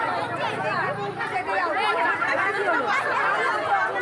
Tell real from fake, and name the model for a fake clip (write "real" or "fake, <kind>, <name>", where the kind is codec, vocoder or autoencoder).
real